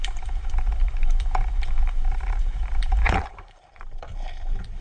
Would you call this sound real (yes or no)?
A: no